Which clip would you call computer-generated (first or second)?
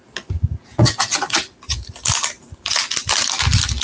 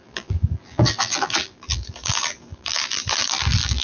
second